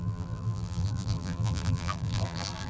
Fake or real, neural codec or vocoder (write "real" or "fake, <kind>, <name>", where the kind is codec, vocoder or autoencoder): fake, vocoder, BigVGAN v2